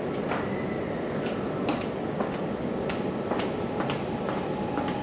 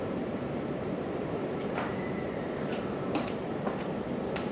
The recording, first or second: first